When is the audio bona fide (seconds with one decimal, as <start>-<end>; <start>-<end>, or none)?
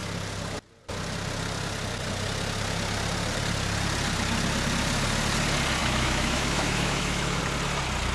0.0-5.8; 7.4-8.1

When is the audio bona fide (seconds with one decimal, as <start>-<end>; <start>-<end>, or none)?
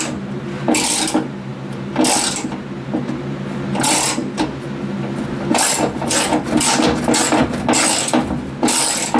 0.0-9.2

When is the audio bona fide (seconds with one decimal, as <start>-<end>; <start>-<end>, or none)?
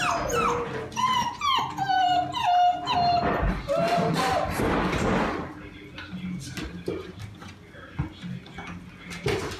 0.0-9.6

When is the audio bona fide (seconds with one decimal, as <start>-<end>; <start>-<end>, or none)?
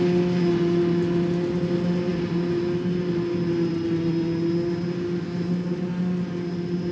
0.0-6.9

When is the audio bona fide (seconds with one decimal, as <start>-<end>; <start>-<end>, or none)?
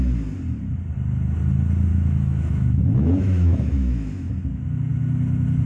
0.0-1.9; 4.3-5.7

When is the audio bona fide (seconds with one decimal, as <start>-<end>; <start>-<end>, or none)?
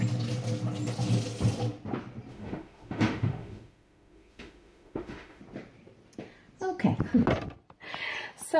0.0-2.3; 5.4-8.6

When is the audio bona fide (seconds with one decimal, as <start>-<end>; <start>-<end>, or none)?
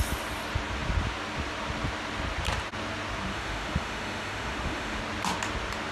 0.0-3.3; 5.0-5.9